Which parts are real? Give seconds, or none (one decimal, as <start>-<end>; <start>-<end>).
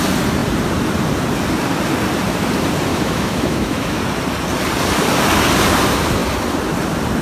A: 0.0-2.9; 4.0-7.2